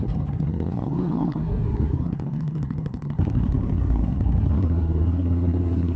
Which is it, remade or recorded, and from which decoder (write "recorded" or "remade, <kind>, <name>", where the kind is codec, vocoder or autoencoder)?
remade, codec, SNAC